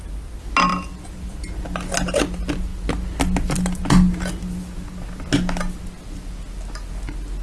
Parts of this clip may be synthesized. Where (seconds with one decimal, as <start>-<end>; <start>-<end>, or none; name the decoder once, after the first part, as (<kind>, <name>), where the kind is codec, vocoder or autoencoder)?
0.7-1.4 (vocoder, BigVGAN v2)